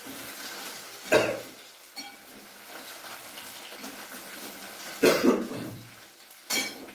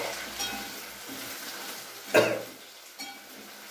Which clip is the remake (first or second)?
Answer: first